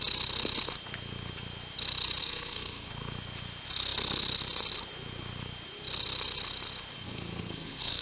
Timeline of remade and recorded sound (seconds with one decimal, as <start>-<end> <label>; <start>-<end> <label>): 0.0-2.2 recorded; 2.2-2.9 remade; 2.9-6.9 recorded; 6.9-8.0 remade